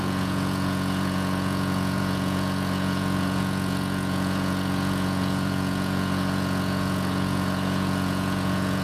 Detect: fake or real fake